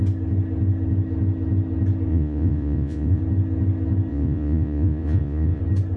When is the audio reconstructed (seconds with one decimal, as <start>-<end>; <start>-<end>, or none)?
2.1-3.2; 4.1-5.6

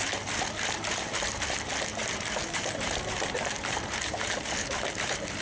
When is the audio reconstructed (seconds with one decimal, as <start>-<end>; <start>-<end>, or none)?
0.0-5.4

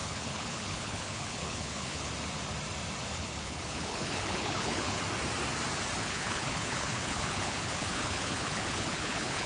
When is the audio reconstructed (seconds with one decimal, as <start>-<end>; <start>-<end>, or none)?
0.0-2.1; 3.1-5.0; 6.0-9.5

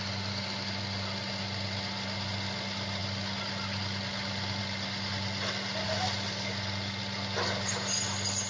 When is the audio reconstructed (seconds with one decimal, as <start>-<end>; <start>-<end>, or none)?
none

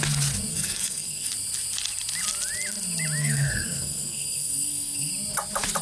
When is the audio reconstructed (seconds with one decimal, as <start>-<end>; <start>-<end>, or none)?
0.5-1.3; 3.2-5.1

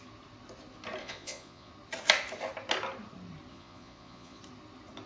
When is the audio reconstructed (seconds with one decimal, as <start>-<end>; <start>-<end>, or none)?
1.0-1.7; 3.5-4.4

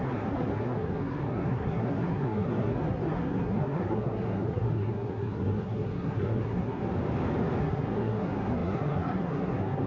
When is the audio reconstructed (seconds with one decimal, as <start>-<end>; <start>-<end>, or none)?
0.0-6.8; 7.6-9.9

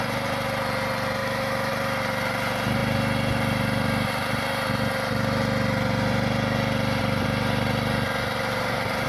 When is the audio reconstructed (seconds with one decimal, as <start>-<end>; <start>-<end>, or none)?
1.2-1.7